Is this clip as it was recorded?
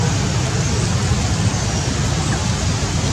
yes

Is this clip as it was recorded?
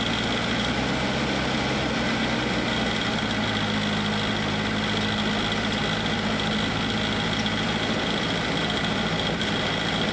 yes